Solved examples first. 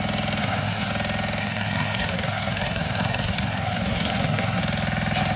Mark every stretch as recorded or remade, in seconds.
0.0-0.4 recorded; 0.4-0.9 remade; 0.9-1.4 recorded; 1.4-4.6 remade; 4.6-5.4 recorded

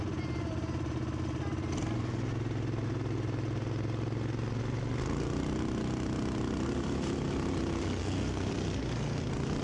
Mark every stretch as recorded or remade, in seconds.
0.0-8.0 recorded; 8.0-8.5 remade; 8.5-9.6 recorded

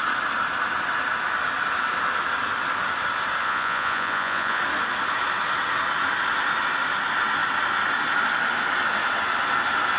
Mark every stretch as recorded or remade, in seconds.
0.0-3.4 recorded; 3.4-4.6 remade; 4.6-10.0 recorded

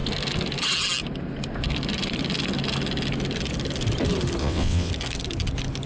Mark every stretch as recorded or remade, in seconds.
0.0-4.4 recorded; 4.4-4.9 remade; 4.9-5.9 recorded